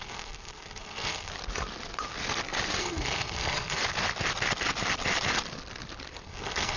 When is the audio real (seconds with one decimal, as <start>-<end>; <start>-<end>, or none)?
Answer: 1.3-2.8; 3.8-6.2